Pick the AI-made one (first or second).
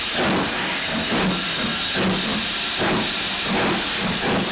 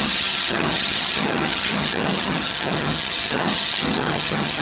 second